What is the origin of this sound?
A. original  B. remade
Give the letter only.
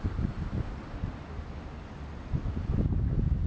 A